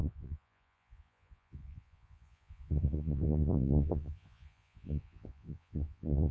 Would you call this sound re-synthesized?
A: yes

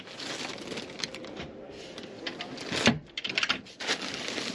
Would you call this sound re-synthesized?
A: no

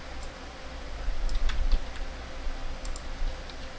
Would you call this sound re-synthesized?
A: no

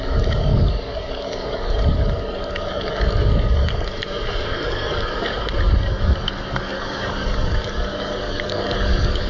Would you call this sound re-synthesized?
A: yes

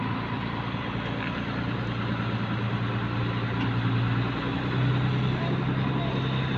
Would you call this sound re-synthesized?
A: no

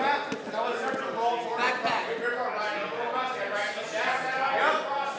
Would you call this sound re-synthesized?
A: no